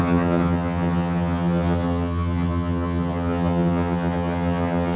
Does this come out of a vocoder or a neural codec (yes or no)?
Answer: yes